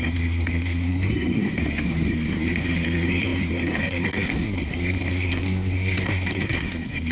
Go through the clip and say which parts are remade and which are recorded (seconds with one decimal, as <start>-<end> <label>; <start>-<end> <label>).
0.0-7.1 remade